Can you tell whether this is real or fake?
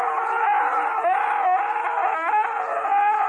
real